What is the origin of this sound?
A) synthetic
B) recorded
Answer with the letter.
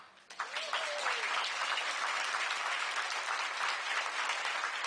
B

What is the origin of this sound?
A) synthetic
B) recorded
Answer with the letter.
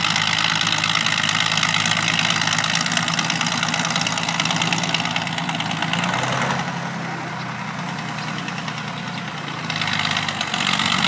B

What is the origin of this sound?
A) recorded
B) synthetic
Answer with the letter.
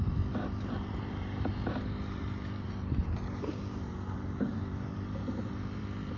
B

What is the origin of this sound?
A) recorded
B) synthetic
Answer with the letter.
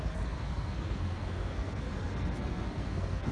B